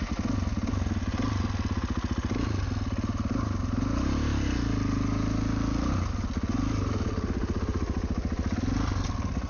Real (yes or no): yes